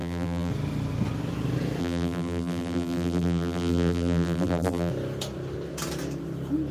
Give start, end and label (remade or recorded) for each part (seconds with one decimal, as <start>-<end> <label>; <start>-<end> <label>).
0.0-0.5 remade; 0.5-1.8 recorded; 1.8-4.9 remade; 4.9-6.7 recorded